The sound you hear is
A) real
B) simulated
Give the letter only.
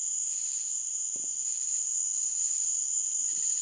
A